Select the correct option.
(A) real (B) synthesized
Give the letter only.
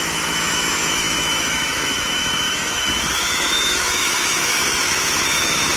B